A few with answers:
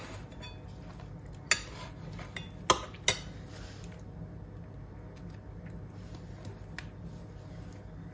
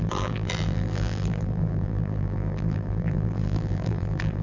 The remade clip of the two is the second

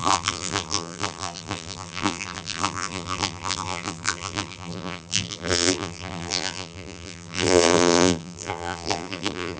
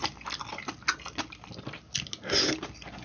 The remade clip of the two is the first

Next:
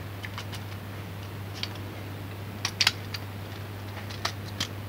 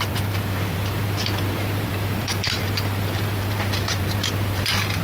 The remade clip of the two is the second